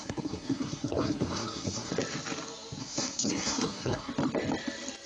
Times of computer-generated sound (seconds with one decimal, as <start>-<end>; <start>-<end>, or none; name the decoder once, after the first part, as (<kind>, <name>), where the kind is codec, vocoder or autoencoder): 0.0-1.9 (codec, SNAC); 2.8-4.1